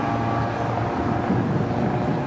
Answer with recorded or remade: recorded